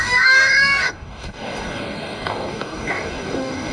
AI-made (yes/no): yes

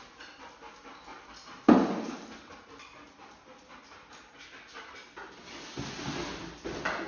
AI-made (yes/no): no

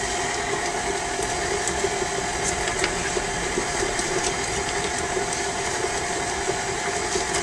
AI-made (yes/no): no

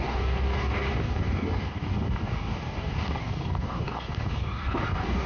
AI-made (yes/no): yes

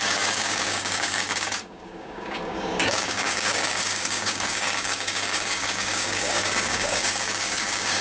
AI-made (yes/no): yes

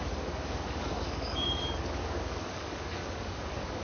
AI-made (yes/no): yes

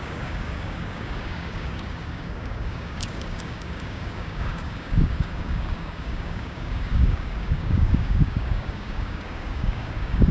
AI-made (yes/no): yes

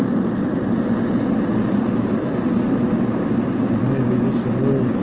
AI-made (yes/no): no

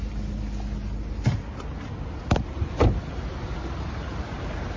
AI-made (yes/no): no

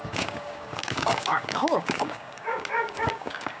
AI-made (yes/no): yes